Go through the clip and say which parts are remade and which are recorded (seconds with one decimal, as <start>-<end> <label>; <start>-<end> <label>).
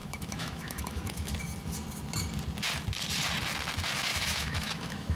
0.0-1.3 remade; 1.3-4.1 recorded; 4.1-5.2 remade